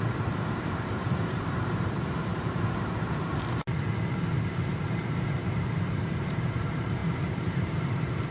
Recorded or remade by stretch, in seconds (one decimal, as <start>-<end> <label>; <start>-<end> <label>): 0.0-8.3 remade